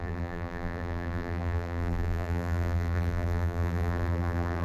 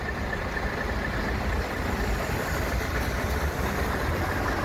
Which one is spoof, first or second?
first